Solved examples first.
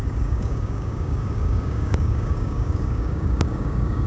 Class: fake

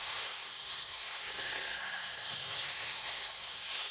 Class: fake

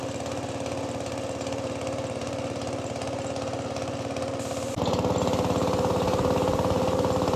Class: real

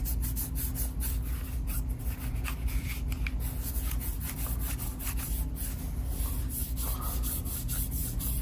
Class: real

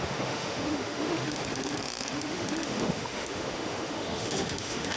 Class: fake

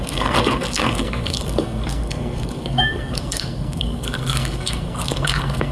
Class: fake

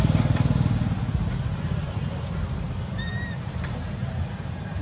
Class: real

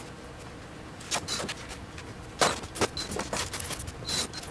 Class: real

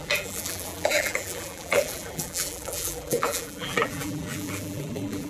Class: fake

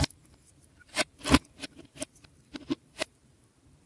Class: fake